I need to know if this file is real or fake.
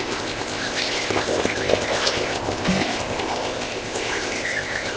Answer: fake